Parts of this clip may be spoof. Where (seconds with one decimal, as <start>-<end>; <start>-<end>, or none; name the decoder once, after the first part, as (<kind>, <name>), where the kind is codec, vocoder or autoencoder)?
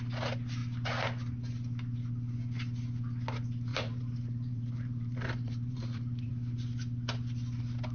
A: 3.7-6.3 (vocoder, BigVGAN v2)